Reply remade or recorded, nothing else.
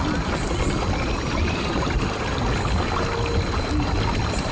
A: recorded